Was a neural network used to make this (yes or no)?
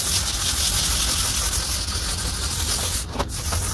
no